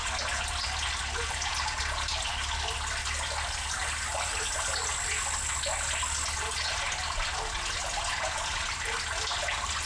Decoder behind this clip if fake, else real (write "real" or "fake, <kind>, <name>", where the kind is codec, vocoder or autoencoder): real